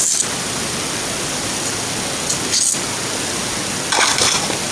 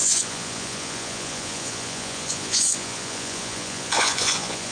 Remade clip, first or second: second